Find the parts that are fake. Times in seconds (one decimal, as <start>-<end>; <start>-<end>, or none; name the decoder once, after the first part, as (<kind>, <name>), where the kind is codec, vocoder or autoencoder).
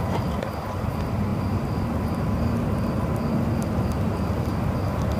none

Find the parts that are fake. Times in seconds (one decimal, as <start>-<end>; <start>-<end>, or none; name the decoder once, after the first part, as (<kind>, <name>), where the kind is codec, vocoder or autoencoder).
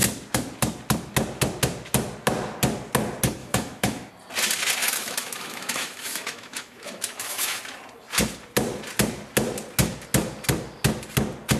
3.4-4.1 (autoencoder, DAC-VAE); 4.8-7.6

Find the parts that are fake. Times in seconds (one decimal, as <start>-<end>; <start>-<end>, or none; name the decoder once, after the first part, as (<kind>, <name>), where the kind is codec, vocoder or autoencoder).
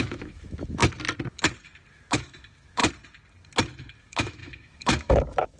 0.0-0.8 (autoencoder, DAC-VAE); 1.9-2.8; 4.0-5.6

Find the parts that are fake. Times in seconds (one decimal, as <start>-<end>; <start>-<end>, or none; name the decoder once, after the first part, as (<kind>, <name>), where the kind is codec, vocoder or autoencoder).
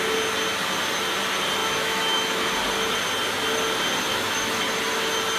1.6-2.5 (autoencoder, DAC-VAE); 4.1-4.6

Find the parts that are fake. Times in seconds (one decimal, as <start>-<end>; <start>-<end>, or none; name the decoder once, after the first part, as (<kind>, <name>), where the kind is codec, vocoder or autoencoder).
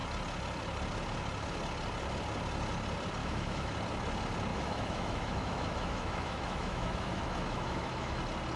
3.2-3.7 (autoencoder, DAC-VAE); 4.5-8.2